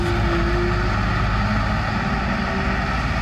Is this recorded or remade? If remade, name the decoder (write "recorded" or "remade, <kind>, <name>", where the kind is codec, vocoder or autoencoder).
recorded